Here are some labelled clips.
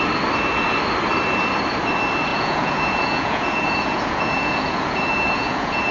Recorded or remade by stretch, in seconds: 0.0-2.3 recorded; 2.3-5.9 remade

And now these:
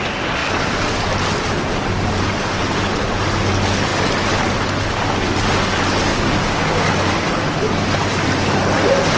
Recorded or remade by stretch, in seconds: 0.0-6.1 recorded; 6.1-6.9 remade; 6.9-9.2 recorded

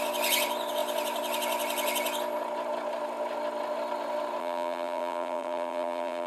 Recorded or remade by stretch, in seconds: 0.0-4.4 recorded; 4.4-6.3 remade

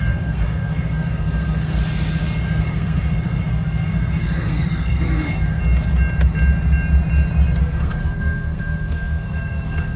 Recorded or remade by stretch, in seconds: 0.0-1.8 remade; 1.8-2.6 recorded; 2.6-5.6 remade; 5.6-7.6 recorded; 7.6-10.0 remade

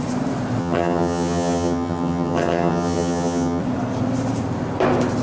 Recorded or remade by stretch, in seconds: 0.0-0.6 recorded; 0.6-3.6 remade; 3.6-5.2 recorded